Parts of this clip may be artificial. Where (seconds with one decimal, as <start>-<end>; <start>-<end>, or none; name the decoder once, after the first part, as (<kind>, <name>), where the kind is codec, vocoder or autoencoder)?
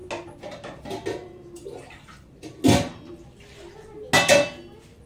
none